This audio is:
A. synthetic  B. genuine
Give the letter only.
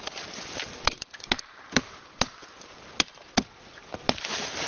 B